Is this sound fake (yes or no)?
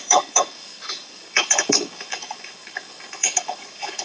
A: yes